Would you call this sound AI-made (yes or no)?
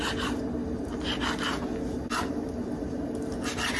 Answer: no